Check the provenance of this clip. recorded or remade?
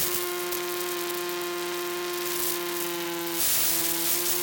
recorded